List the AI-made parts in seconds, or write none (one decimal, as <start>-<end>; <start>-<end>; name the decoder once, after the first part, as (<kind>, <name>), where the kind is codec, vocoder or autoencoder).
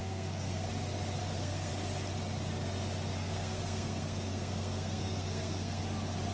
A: 0.0-0.7 (codec, SNAC); 1.2-1.7; 3.1-5.8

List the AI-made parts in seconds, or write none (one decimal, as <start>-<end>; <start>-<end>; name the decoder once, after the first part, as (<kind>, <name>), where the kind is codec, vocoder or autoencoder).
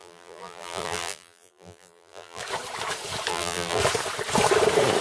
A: 0.0-2.4 (vocoder, BigVGAN v2); 3.3-3.8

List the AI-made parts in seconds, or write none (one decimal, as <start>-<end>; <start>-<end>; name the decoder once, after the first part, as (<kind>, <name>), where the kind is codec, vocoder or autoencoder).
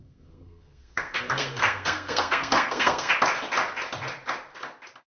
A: 0.0-3.1 (codec, SNAC)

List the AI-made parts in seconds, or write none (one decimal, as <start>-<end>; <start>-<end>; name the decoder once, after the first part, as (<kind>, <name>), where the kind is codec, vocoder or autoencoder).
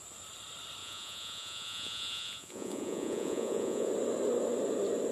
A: 0.8-3.9 (vocoder, Vocos)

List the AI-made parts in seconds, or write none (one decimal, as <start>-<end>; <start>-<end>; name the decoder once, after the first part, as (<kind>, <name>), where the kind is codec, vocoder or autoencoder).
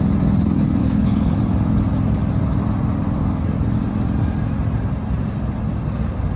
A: 0.8-1.4 (codec, HILCodec)